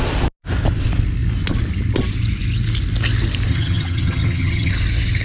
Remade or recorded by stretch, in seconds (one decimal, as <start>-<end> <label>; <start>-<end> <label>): 0.0-3.5 recorded; 3.5-4.7 remade; 4.7-5.2 recorded